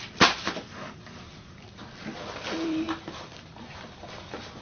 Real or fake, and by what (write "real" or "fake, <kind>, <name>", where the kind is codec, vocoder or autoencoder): fake, vocoder, BigVGAN v2